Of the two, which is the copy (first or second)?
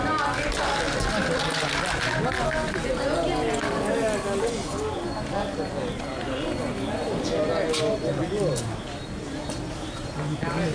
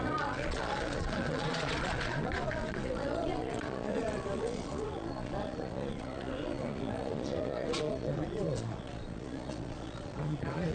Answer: second